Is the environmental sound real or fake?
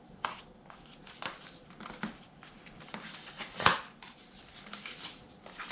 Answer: real